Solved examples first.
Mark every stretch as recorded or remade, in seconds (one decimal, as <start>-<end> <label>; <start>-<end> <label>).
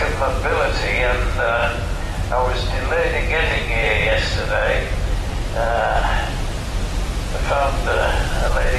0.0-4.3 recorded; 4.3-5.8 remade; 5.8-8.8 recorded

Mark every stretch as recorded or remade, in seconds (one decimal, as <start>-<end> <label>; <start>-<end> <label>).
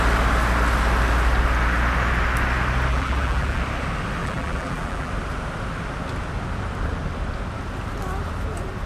0.0-2.9 recorded; 2.9-3.6 remade; 3.6-4.2 recorded; 4.2-5.1 remade; 5.1-8.9 recorded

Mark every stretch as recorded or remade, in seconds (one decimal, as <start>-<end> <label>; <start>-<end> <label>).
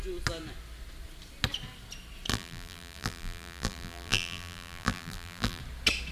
0.0-2.3 recorded; 2.3-5.6 remade; 5.6-6.1 recorded